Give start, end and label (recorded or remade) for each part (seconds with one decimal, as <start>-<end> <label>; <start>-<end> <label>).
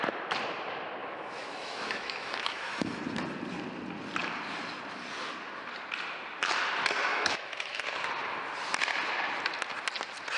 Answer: 0.0-1.0 recorded; 1.0-3.0 remade; 3.0-7.1 recorded; 7.1-7.8 remade; 7.8-10.4 recorded